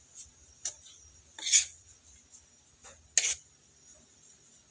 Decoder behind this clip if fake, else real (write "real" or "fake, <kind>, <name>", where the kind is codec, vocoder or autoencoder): real